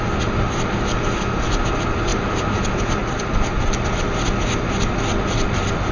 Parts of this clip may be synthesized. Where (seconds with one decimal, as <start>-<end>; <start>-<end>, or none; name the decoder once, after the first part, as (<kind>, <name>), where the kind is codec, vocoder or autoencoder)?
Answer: 2.1-2.6 (vocoder, BigVGAN v2); 3.0-3.8